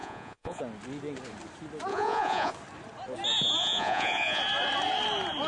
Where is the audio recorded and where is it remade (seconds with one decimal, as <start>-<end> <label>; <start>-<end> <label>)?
0.0-0.6 remade; 0.6-1.9 recorded; 1.9-2.5 remade; 2.5-3.6 recorded; 3.6-4.4 remade; 4.4-5.5 recorded